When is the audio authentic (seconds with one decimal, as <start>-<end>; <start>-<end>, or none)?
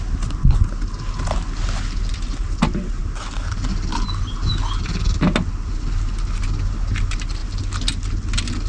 0.0-8.7